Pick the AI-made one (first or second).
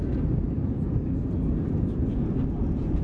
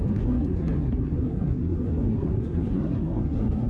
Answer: second